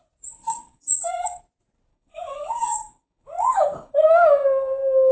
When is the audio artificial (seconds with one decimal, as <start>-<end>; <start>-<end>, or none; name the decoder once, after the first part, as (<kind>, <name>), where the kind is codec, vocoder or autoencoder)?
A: 0.4-1.4 (codec, DAC); 1.9-5.1